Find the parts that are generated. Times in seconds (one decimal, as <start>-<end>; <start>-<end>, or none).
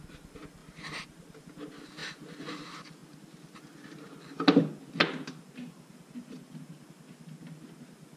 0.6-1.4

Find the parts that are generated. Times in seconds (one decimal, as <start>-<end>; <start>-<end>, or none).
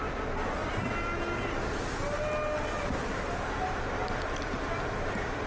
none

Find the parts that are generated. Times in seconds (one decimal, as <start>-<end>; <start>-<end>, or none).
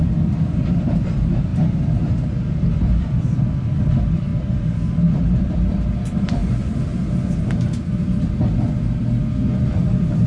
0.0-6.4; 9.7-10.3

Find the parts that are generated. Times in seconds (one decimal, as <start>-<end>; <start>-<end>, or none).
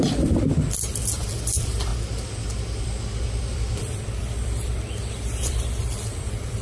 0.0-1.9; 3.4-6.6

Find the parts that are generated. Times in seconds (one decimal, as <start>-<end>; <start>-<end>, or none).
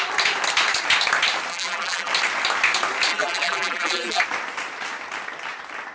1.5-2.1; 3.1-4.2